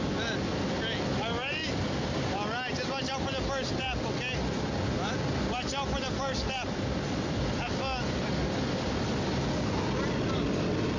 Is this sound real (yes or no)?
yes